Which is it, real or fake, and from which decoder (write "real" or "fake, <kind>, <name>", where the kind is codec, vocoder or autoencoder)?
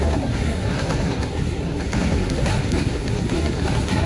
fake, codec, SNAC